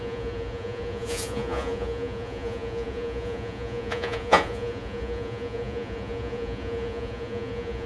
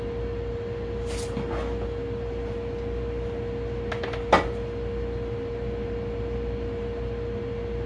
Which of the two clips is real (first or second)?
second